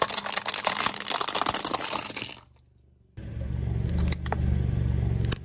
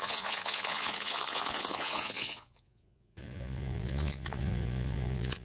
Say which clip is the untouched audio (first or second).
first